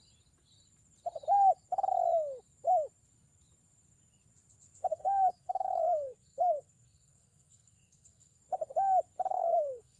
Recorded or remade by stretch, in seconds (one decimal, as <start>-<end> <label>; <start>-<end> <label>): 0.0-4.9 recorded; 4.9-8.4 remade; 8.4-9.3 recorded; 9.3-10.0 remade